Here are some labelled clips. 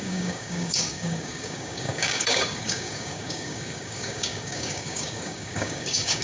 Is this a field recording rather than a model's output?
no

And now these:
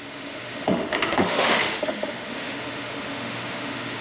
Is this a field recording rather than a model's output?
no